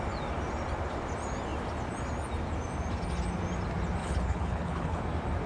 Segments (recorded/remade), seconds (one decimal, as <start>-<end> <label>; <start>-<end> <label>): 0.0-4.0 recorded; 4.0-5.0 remade; 5.0-5.5 recorded